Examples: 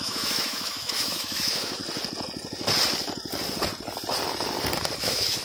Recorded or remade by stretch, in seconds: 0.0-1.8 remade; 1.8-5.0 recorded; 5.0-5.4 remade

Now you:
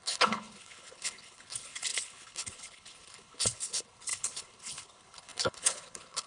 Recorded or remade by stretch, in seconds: 0.0-6.3 remade

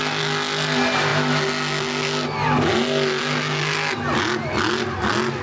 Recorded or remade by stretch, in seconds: 0.0-5.4 recorded